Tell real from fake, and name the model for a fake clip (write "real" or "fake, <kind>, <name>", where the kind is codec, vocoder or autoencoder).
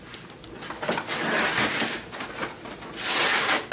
real